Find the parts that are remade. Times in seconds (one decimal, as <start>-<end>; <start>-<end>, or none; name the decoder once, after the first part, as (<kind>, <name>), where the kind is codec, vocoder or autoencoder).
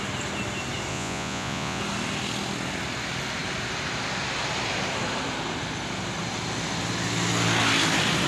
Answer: 0.9-1.8 (vocoder, Vocos)